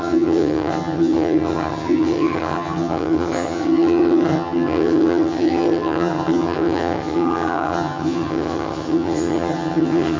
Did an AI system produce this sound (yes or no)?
yes